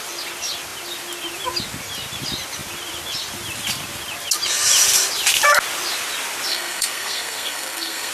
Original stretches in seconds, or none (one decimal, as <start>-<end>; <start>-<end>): 0.0-6.5